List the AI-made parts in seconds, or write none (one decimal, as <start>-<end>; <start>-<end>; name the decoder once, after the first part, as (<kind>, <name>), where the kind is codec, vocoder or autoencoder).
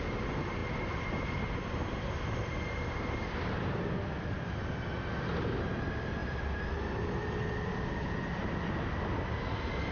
none